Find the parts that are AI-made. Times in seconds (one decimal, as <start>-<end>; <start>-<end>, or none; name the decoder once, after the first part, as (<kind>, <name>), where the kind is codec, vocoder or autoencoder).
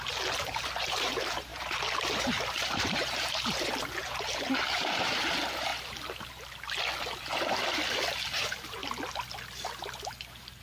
0.0-5.7 (vocoder, BigVGAN v2); 8.1-8.8